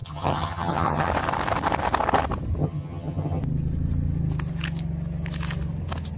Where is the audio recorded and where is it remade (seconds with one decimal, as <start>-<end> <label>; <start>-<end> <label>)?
0.0-1.1 remade; 1.1-2.6 recorded; 2.6-3.4 remade; 3.4-6.2 recorded